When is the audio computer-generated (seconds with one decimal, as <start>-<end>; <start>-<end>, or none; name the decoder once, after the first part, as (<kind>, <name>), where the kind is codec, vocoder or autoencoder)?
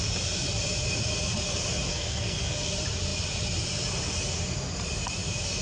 1.9-2.7 (codec, SNAC)